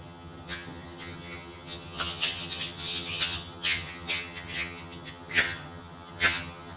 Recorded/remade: remade